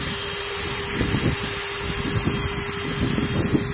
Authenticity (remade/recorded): recorded